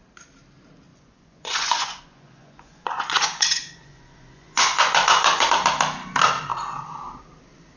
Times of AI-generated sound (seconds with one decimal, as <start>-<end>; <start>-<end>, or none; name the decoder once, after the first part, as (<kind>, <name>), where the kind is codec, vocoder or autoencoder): 0.9-5.5 (vocoder, Vocos)

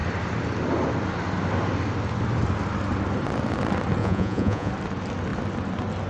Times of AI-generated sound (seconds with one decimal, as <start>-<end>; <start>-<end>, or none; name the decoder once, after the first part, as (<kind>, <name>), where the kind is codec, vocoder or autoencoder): 4.0-4.7 (vocoder, Vocos)

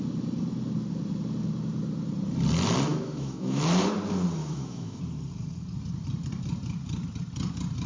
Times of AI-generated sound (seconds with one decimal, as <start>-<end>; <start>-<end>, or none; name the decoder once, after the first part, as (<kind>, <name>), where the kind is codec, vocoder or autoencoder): 2.9-3.6 (autoencoder, DAC-VAE); 4.4-5.0

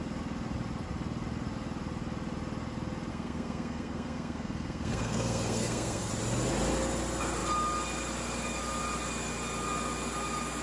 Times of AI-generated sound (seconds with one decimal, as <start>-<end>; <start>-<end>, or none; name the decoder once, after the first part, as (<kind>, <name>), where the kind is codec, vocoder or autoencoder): 3.1-6.1 (codec, SNAC)

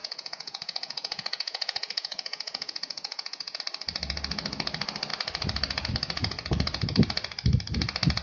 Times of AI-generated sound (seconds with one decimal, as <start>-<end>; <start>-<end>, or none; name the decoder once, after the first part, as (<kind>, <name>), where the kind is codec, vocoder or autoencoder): 0.0-3.6 (vocoder, Vocos)

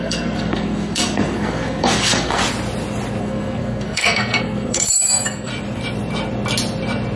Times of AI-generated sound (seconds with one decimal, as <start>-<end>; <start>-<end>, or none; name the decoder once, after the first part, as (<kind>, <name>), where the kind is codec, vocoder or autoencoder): 0.0-2.4 (codec, SNAC); 3.2-5.5

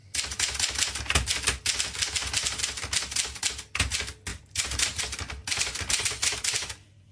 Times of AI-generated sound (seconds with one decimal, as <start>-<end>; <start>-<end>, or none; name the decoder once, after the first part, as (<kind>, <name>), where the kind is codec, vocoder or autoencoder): 4.3-5.0 (vocoder, BigVGAN v2)

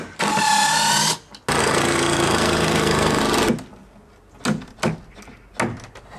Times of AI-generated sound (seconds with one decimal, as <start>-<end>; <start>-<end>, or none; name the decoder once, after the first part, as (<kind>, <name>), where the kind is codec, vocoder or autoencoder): 1.6-3.2 (codec, SNAC)